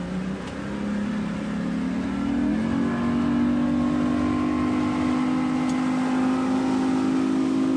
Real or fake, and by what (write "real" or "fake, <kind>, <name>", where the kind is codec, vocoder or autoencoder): real